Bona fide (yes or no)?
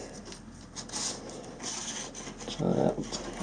yes